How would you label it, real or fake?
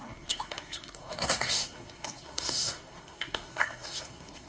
fake